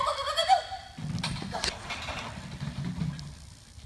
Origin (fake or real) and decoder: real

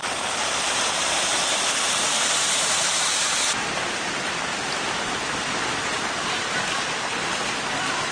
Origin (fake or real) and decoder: fake, vocoder, BigVGAN v2